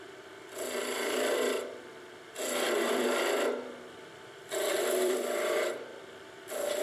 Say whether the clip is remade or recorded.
remade